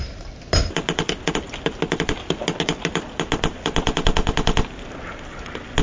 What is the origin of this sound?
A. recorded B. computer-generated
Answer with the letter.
A